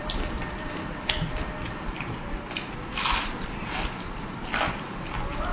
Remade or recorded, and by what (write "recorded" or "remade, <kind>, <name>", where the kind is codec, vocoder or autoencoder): remade, vocoder, BigVGAN v2